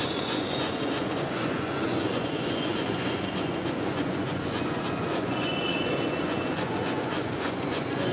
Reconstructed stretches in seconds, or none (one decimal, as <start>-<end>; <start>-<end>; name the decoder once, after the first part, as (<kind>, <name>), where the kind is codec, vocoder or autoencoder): 0.0-8.1 (vocoder, Vocos)